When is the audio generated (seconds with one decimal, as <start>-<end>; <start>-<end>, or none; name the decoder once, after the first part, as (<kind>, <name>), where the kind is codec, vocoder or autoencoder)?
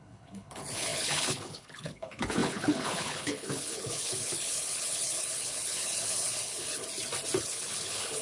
0.0-6.8 (codec, HILCodec); 7.4-8.2